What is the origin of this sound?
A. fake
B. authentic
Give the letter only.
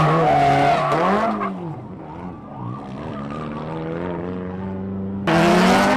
B